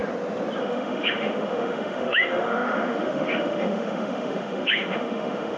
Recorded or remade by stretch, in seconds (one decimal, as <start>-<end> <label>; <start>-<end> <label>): 0.0-0.6 recorded; 0.6-5.6 remade